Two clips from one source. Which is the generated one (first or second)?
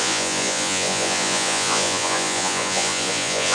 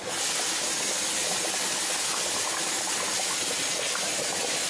first